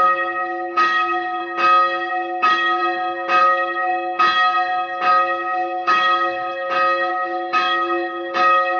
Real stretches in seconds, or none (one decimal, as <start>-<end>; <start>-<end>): 1.4-2.1; 2.8-3.4; 3.9-5.1; 6.5-7.1